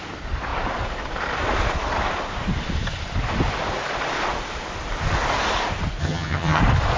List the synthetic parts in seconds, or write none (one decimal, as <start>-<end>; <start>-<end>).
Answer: 6.0-6.6